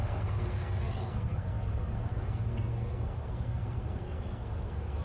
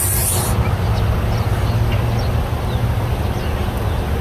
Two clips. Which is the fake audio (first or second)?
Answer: first